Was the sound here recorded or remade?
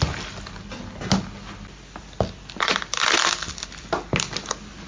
recorded